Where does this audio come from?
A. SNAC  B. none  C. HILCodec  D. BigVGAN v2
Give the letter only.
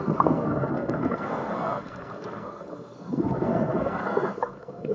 A